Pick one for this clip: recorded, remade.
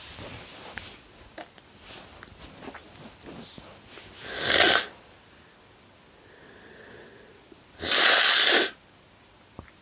recorded